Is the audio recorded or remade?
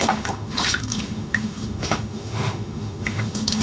remade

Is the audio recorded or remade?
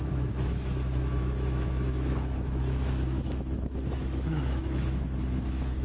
remade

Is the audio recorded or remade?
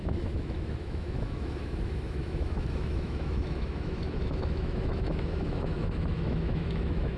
remade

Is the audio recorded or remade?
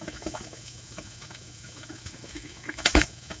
remade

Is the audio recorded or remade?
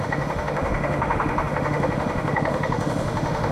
remade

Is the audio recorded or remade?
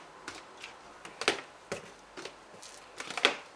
recorded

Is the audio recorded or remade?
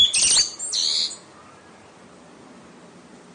recorded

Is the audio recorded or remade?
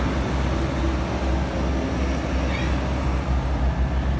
recorded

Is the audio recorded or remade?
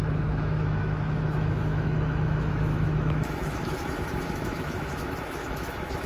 remade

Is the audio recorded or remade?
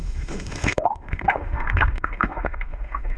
remade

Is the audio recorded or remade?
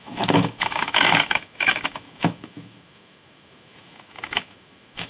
remade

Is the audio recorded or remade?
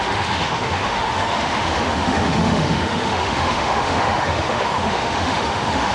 remade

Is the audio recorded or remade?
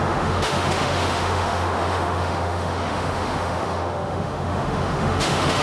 remade